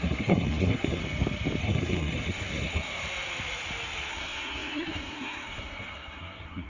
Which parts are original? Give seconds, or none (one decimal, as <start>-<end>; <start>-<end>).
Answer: 1.0-1.6; 3.0-4.1